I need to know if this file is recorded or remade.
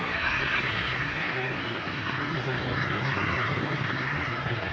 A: remade